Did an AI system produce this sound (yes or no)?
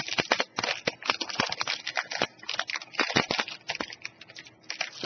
no